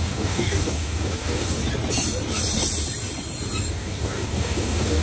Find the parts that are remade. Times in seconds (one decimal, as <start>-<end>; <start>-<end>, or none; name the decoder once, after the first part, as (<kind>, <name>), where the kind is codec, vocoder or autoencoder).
0.0-1.6 (codec, DAC); 3.7-5.0